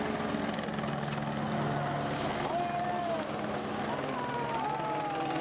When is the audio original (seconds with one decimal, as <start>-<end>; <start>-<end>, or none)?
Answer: 0.0-5.4